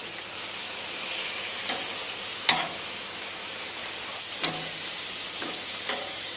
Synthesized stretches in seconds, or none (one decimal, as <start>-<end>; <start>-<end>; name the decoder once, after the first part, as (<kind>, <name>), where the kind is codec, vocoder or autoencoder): 0.6-1.6 (autoencoder, DAC-VAE); 2.3-3.8; 5.4-6.4